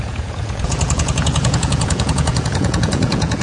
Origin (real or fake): fake